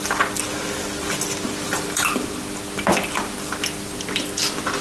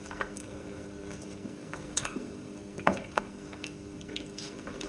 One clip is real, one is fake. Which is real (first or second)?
first